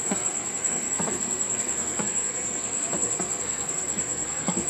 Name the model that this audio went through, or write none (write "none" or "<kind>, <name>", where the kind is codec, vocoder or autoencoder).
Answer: codec, SNAC